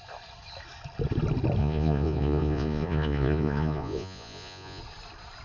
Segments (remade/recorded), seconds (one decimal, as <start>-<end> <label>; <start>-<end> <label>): 0.0-1.6 recorded; 1.6-4.8 remade; 4.8-5.4 recorded